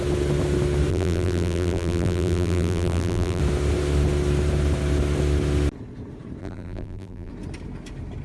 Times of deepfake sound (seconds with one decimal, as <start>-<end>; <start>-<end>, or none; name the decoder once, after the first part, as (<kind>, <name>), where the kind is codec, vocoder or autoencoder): 0.9-3.4 (vocoder, BigVGAN v2); 6.4-7.3